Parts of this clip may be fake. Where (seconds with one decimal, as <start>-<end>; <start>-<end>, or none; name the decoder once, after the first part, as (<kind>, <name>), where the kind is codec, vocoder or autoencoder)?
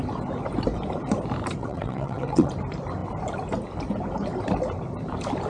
1.6-2.5 (vocoder, WaveNeXt)